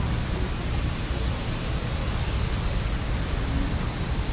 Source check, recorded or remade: remade